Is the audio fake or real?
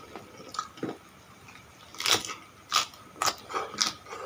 real